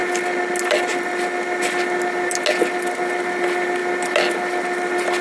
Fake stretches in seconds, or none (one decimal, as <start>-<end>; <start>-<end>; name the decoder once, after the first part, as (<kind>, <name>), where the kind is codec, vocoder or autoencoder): none